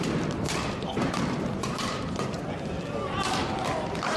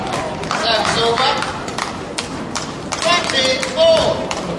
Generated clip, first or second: first